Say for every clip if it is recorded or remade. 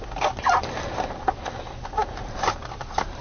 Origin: recorded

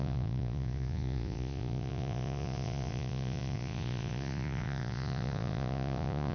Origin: remade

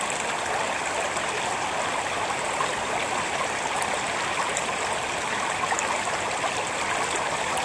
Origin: recorded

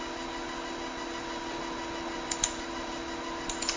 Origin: recorded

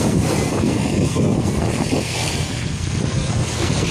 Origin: remade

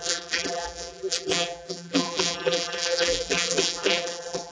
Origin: remade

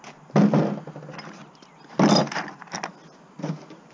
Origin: recorded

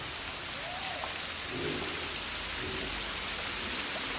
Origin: recorded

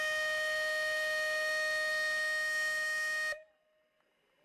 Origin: recorded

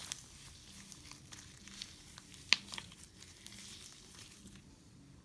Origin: recorded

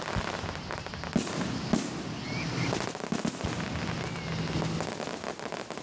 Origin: recorded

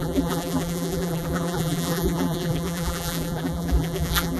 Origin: remade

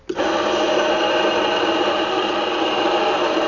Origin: recorded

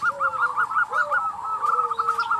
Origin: recorded